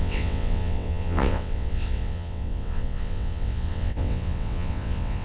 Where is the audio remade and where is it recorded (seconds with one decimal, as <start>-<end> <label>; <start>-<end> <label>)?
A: 0.0-5.2 remade